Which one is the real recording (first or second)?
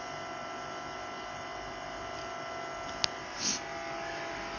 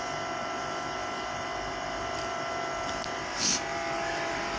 first